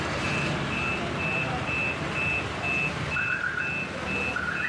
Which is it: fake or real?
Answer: real